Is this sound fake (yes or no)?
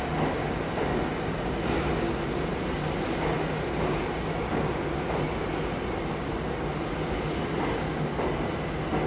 no